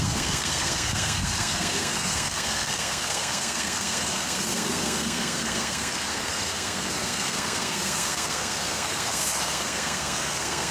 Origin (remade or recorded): remade